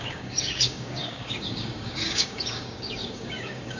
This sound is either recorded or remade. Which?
remade